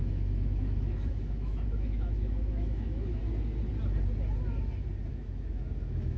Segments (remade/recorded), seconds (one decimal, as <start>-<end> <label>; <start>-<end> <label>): 0.0-3.2 remade; 3.2-5.1 recorded; 5.1-6.2 remade